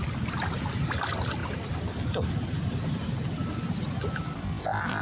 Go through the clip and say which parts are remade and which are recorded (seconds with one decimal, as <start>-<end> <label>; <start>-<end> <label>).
0.0-5.0 recorded